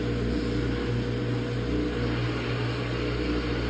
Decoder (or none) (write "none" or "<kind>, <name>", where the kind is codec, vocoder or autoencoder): none